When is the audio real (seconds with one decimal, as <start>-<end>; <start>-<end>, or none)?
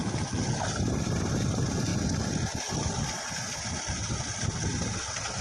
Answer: 0.0-5.4